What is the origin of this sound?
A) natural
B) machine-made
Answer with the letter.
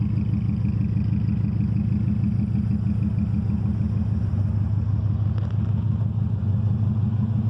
A